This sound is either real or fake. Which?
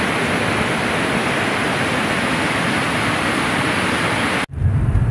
real